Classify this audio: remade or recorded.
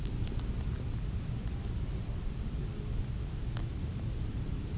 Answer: recorded